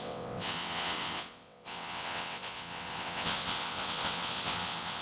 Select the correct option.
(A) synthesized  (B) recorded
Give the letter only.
A